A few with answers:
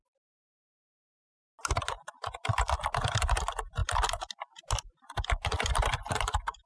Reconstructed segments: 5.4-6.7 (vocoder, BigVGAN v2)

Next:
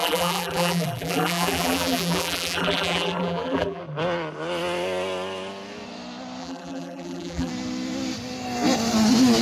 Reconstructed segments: 0.0-3.8 (vocoder, BigVGAN v2); 6.4-7.5

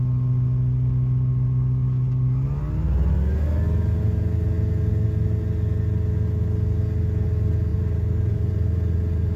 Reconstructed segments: 7.7-9.4 (vocoder, BigVGAN v2)

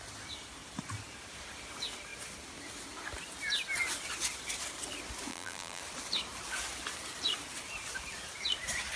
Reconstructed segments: 5.3-5.8 (vocoder, BigVGAN v2)

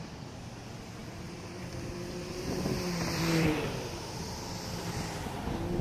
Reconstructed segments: 1.0-4.5 (vocoder, BigVGAN v2)

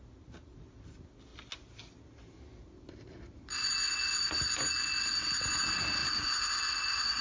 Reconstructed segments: none

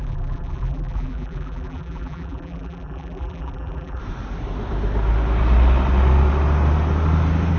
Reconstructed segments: 0.0-4.0 (vocoder, BigVGAN v2)

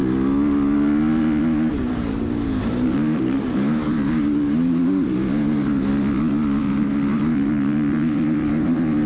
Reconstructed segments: 1.7-5.9 (vocoder, BigVGAN v2); 6.6-9.1